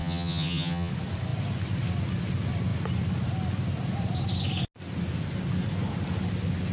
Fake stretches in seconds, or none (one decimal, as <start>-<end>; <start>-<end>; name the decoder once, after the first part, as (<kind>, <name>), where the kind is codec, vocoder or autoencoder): 0.0-0.9 (vocoder, HiFi-GAN)